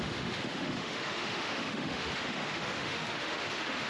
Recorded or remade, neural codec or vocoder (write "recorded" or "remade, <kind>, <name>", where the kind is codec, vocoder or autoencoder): remade, autoencoder, DAC-VAE